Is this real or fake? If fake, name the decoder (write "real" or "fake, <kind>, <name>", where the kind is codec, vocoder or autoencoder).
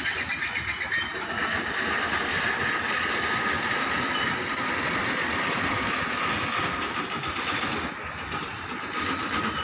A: real